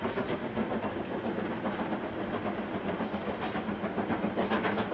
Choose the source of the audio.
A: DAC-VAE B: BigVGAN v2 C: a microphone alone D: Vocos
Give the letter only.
C